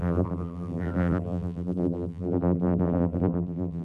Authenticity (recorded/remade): remade